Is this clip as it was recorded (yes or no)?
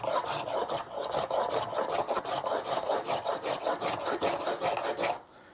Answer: yes